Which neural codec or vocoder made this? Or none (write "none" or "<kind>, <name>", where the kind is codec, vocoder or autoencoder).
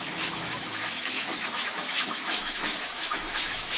autoencoder, DAC-VAE